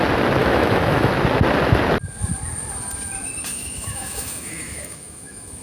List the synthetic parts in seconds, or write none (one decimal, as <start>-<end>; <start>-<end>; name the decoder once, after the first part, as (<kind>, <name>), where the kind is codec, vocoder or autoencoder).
0.4-1.1 (autoencoder, DAC-VAE); 3.5-5.6

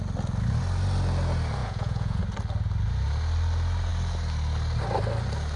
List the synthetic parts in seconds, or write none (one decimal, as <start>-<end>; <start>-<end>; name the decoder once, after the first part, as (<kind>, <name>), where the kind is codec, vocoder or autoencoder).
1.6-2.2 (vocoder, Vocos)

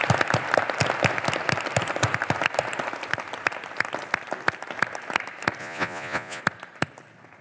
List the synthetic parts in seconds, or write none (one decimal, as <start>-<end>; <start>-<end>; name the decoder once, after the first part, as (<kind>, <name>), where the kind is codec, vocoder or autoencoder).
5.6-6.4 (vocoder, Vocos)

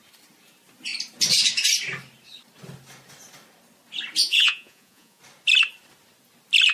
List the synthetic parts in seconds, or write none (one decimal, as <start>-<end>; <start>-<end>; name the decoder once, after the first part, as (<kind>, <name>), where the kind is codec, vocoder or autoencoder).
4.2-5.2 (vocoder, Vocos)

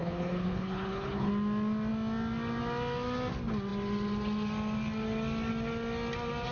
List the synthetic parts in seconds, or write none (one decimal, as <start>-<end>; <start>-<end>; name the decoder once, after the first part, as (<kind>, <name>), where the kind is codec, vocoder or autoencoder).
0.0-1.3 (codec, HILCodec)

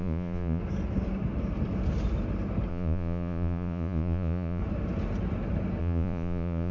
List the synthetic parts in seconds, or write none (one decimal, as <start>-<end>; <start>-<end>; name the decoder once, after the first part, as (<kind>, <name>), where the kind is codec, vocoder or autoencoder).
0.0-0.6 (vocoder, Vocos); 2.7-4.6; 5.8-6.7

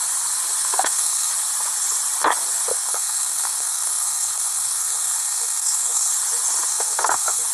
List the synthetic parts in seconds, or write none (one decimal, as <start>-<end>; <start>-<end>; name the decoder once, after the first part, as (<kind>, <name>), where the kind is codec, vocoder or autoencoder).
0.6-1.3 (codec, SNAC); 2.7-6.1; 6.7-7.5